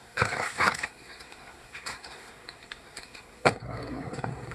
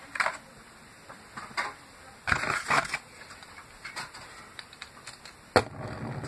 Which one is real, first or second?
second